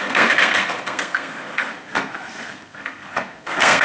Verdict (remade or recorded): remade